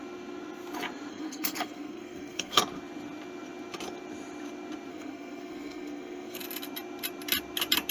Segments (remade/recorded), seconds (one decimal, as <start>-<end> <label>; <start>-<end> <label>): 0.0-1.1 recorded; 1.1-2.6 remade; 2.6-4.9 recorded; 4.9-6.4 remade; 6.4-7.9 recorded